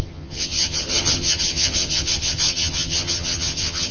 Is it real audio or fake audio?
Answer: fake